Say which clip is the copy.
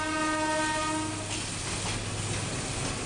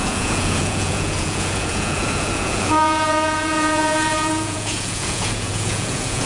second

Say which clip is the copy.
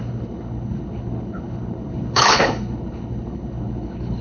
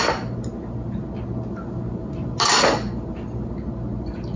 first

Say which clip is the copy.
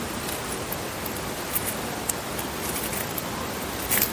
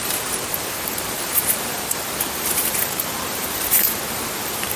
second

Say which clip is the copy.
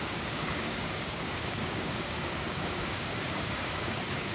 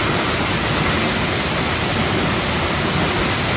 first